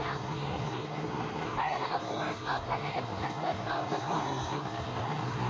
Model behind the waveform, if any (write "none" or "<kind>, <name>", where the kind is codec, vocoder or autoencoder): codec, SNAC